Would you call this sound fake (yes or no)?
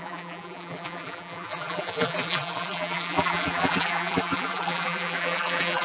yes